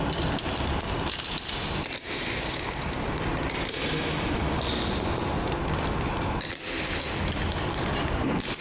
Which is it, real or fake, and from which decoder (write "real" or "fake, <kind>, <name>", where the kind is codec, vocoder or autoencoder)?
real